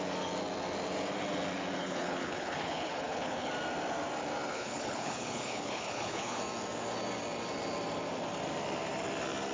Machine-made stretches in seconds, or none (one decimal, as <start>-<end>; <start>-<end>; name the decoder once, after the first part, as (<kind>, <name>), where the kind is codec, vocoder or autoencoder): 1.8-3.5 (codec, HILCodec); 4.5-6.4